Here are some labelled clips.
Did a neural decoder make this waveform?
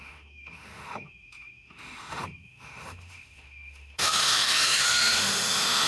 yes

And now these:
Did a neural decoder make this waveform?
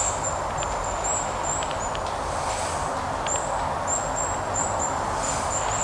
no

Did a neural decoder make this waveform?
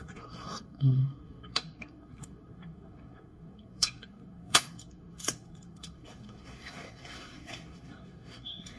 yes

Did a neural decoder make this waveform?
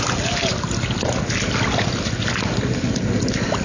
no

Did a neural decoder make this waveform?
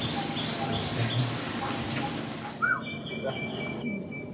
no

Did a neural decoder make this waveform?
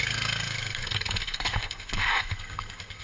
yes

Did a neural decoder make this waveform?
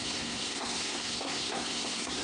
yes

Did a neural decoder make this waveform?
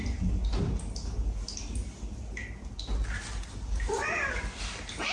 no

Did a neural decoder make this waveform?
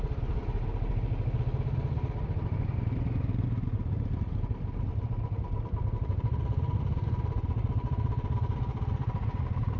no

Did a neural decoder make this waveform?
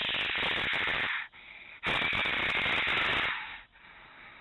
no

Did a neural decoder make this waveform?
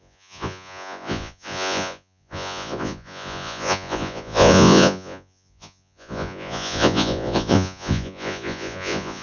yes